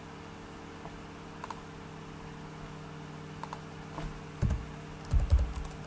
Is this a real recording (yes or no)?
yes